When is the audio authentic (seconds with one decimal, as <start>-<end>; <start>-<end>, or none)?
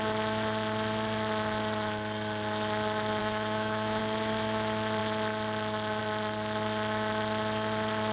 0.0-3.2; 4.0-8.1